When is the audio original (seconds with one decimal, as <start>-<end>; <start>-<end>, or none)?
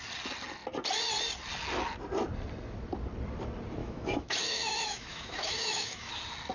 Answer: 0.0-3.8; 6.1-6.5